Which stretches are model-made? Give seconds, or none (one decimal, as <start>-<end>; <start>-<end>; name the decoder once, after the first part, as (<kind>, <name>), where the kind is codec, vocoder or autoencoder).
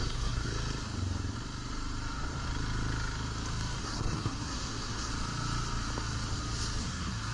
0.0-0.5 (codec, SNAC); 3.8-5.1; 6.8-7.3